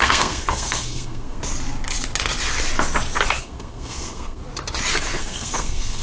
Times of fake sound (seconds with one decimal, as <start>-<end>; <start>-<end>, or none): 0.0-1.4; 3.4-4.4; 5.2-6.0